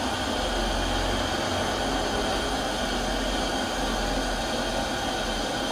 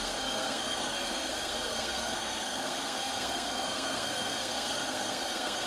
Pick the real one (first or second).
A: first